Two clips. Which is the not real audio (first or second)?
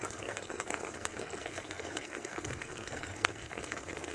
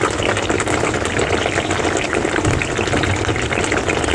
first